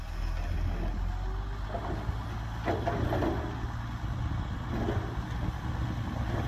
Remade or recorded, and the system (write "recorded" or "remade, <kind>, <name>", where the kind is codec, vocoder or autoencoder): recorded